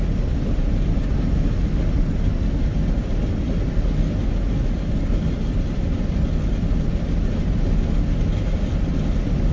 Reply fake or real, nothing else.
real